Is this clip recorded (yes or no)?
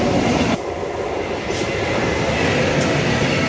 yes